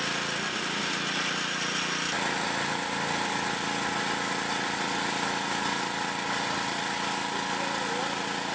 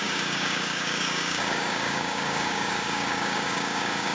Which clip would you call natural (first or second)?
first